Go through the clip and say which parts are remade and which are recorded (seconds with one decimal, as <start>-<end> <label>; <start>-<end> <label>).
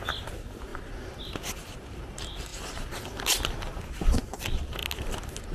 0.0-5.5 recorded